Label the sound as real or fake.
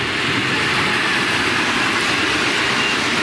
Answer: fake